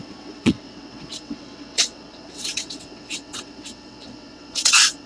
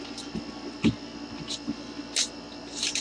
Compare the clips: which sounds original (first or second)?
second